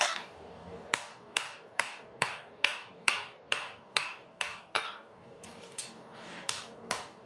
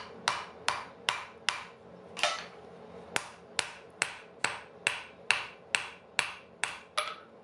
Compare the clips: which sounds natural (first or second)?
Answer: second